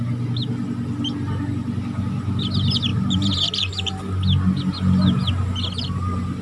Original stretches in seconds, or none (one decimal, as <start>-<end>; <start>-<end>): 0.0-2.9; 4.0-6.4